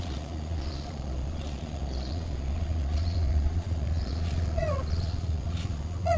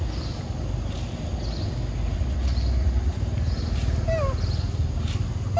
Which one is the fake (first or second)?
first